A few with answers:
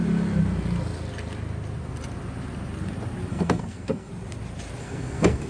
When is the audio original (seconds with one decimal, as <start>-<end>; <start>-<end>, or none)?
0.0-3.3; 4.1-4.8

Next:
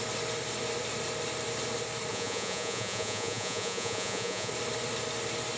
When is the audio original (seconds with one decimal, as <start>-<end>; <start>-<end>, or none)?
0.0-2.1; 4.5-5.6

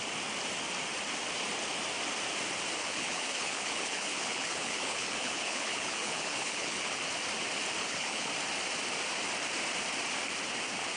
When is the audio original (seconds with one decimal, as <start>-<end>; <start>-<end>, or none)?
0.0-2.8; 7.0-7.8; 8.3-11.0

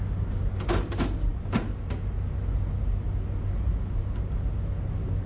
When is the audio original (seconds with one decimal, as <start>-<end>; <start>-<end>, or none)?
0.0-5.3